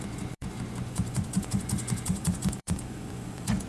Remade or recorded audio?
remade